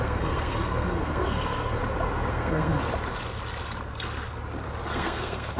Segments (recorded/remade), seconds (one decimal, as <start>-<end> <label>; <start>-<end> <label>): 0.0-1.8 remade; 1.8-2.3 recorded; 2.3-2.8 remade; 2.8-4.9 recorded; 4.9-5.6 remade